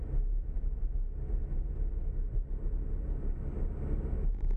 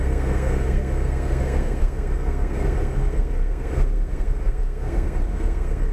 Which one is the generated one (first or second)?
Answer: second